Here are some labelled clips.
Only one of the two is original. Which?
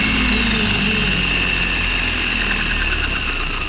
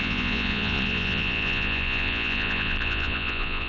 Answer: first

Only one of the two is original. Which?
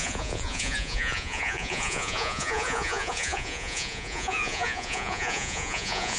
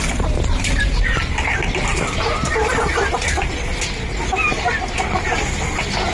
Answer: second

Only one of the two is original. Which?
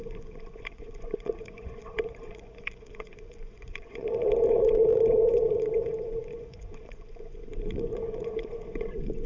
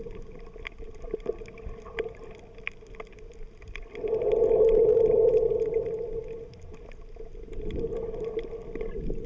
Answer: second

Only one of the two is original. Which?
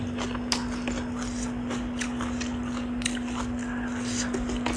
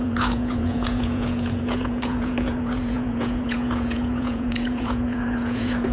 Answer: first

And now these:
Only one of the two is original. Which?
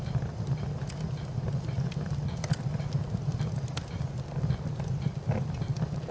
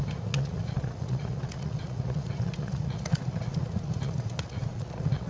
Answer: first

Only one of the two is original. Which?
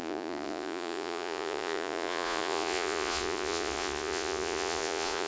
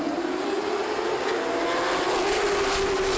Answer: second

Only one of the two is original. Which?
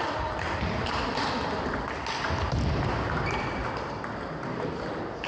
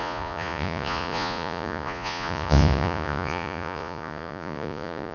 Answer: first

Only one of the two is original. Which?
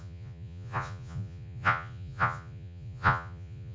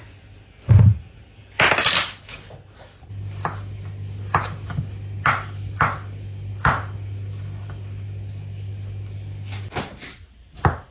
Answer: second